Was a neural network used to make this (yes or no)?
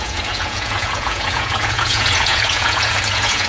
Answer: yes